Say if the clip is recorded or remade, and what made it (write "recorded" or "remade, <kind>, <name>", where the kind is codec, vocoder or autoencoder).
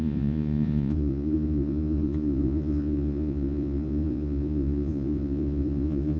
remade, vocoder, Vocos